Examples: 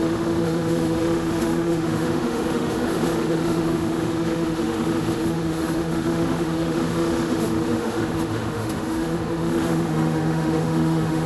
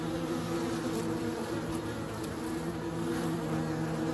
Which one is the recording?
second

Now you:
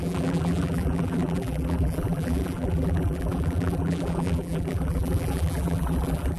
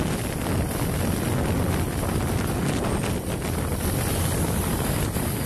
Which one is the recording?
second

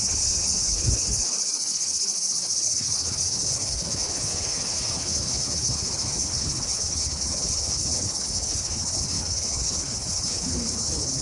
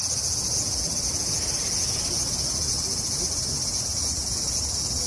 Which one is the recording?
second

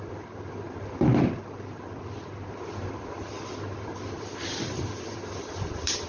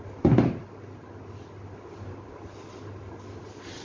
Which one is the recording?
second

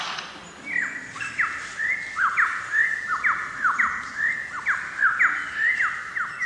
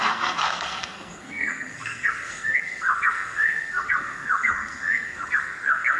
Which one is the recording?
first